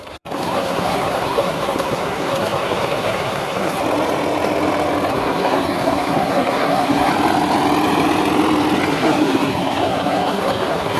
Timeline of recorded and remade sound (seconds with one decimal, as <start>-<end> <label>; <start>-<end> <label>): 0.0-3.8 remade; 3.8-5.1 recorded; 5.1-7.1 remade; 7.1-8.9 recorded; 8.9-11.0 remade